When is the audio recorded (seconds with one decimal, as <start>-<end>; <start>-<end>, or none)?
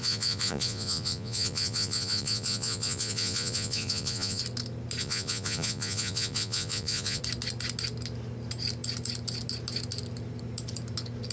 4.4-5.0; 7.2-11.3